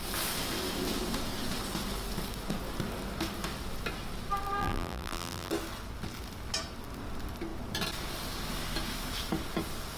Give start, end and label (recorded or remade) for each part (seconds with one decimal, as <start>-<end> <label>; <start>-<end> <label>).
0.0-4.6 recorded; 4.6-5.5 remade; 5.5-10.0 recorded